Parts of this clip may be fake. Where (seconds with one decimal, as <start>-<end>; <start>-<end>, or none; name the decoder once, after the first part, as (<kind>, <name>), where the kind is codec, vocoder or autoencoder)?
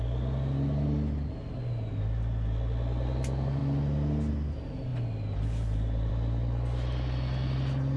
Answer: none